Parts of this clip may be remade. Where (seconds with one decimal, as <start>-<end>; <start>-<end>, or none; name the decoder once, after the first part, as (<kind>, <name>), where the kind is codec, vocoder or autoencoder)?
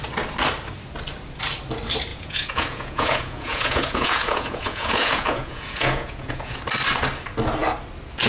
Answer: 2.1-6.6 (vocoder, Vocos)